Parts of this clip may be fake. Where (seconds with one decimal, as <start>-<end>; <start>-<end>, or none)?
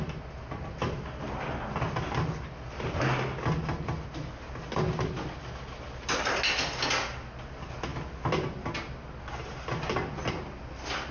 none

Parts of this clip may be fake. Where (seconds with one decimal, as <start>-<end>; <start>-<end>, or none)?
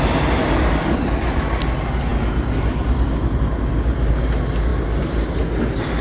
none